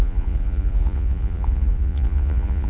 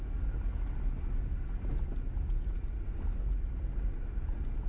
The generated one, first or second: first